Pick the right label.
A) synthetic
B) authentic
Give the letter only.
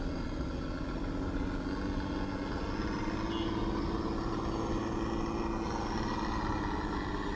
B